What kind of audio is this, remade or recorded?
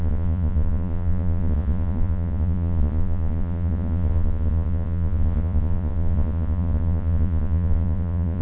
remade